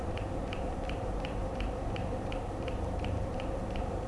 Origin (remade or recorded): remade